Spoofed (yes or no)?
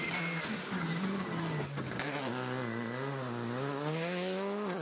no